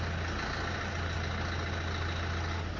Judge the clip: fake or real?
real